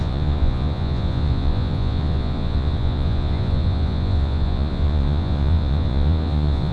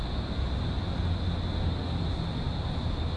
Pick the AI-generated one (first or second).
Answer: first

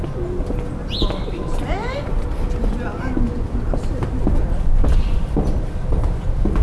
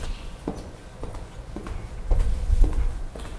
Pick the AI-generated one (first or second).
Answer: second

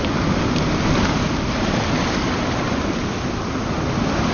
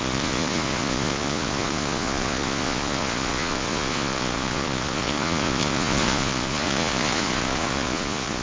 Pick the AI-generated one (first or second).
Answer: second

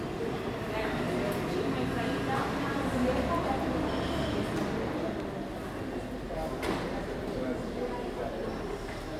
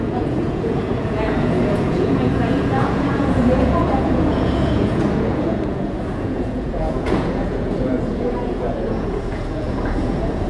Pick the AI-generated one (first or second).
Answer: second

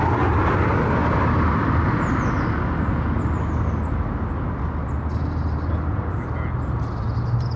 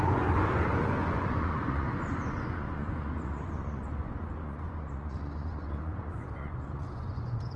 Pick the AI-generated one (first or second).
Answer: second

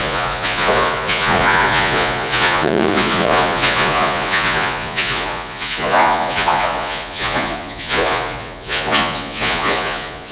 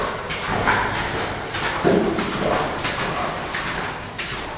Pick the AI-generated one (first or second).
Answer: first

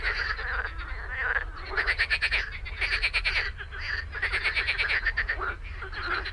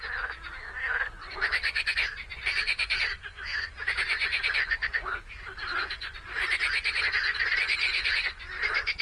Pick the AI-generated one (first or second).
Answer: second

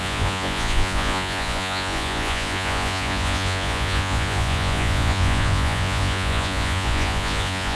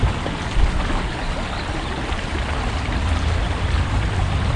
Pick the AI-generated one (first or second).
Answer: first